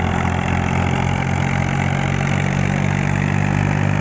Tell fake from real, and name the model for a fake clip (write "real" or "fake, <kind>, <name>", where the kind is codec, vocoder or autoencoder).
real